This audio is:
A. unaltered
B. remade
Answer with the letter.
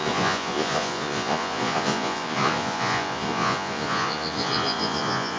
B